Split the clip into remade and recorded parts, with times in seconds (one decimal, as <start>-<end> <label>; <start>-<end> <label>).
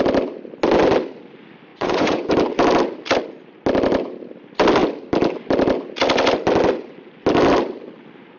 0.0-1.7 recorded; 1.7-2.3 remade; 2.3-8.4 recorded